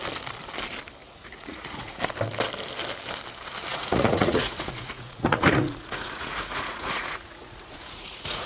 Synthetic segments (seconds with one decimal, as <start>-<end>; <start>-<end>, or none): 1.0-2.0; 3.7-8.5